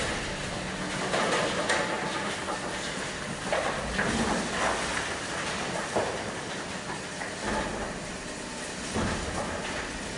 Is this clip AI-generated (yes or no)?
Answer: no